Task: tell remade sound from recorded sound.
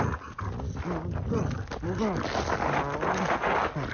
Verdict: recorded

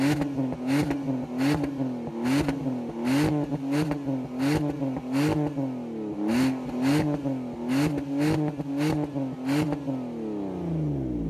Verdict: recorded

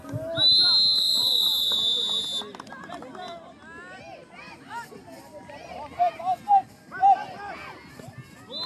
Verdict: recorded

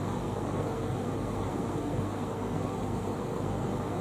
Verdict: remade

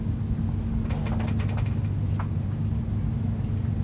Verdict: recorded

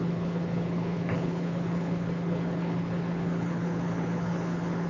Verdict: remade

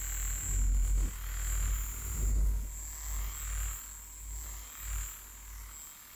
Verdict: recorded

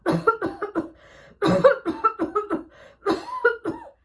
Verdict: recorded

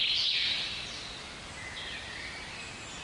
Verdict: recorded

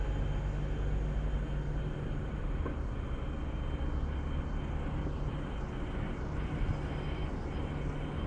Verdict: recorded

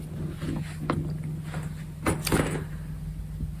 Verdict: recorded